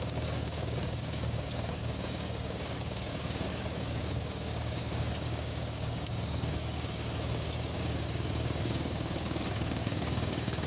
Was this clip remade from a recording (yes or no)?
yes